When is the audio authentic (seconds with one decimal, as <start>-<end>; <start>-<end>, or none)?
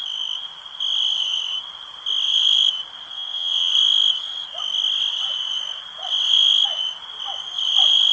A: 0.0-3.1; 3.7-8.1